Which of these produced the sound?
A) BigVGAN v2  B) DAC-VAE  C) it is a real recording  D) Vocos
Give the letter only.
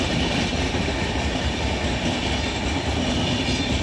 C